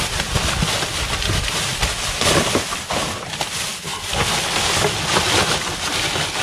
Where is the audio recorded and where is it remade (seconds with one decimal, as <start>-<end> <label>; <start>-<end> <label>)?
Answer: 0.0-6.4 recorded